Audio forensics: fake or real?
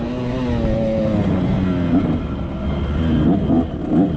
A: real